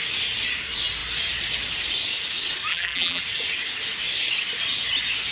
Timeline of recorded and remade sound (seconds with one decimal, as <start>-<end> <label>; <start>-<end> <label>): 0.0-2.7 recorded; 2.7-3.2 remade; 3.2-5.3 recorded